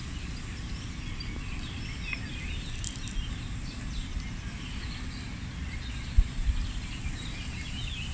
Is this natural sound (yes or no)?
yes